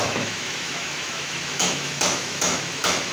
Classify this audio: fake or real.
fake